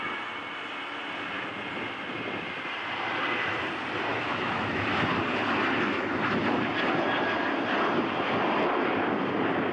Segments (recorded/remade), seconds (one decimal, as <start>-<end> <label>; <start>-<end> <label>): 0.0-4.1 recorded; 4.1-5.0 remade; 5.0-9.7 recorded